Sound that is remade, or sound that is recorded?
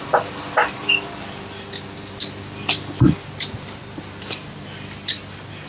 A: recorded